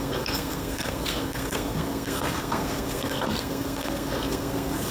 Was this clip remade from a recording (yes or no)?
yes